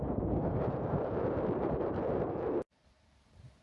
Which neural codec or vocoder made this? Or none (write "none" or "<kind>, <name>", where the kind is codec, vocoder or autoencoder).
vocoder, BigVGAN v2